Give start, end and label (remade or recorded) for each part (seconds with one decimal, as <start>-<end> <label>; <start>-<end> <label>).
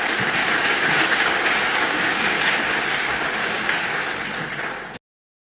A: 0.0-0.4 recorded; 0.4-2.4 remade; 2.4-3.4 recorded; 3.4-4.1 remade; 4.1-5.5 recorded